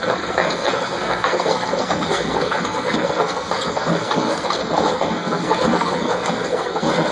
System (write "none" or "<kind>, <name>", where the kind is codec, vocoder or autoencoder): codec, SNAC